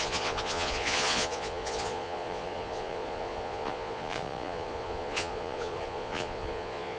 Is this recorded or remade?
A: remade